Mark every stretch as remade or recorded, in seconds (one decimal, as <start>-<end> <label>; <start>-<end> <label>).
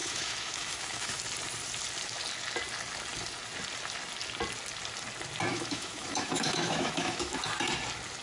0.0-1.2 remade; 1.2-5.5 recorded; 5.5-7.4 remade; 7.4-8.2 recorded